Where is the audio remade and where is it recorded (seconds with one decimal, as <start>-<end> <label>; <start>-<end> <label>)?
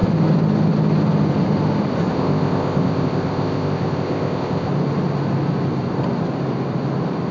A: 0.0-2.1 recorded; 2.1-4.7 remade; 4.7-7.3 recorded